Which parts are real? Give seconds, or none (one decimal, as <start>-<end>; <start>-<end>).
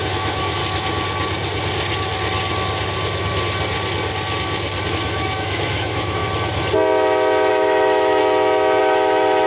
0.6-4.9; 6.2-7.5; 8.2-8.8